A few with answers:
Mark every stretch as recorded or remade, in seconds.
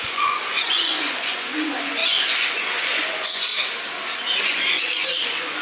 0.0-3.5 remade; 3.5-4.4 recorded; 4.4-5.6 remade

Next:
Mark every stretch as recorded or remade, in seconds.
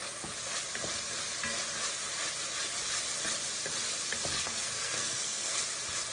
0.0-4.3 recorded; 4.3-5.6 remade; 5.6-6.1 recorded